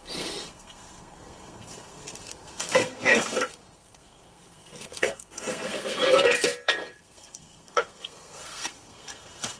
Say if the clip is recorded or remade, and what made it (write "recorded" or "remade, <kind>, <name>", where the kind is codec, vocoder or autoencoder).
remade, codec, SNAC